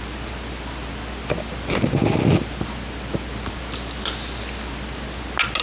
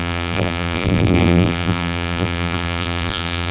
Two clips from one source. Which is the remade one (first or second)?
second